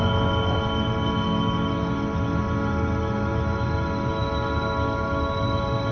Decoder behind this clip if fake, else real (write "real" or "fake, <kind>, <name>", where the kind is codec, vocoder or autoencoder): real